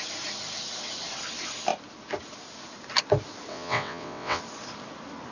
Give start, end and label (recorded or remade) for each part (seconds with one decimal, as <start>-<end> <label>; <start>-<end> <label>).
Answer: 0.0-3.5 recorded; 3.5-4.4 remade; 4.4-5.3 recorded